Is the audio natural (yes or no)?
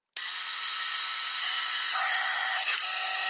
yes